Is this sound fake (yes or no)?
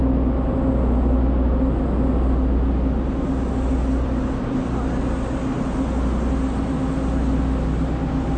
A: no